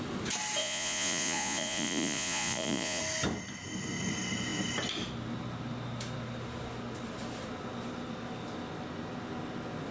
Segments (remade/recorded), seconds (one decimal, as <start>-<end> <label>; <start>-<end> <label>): 0.0-0.6 recorded; 0.6-3.0 remade; 3.0-9.9 recorded